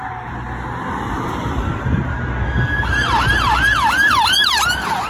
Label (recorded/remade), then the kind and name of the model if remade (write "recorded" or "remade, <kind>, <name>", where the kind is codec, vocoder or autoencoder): recorded